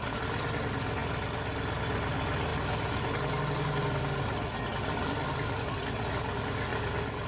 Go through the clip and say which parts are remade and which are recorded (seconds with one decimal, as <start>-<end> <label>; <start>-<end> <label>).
0.0-7.3 recorded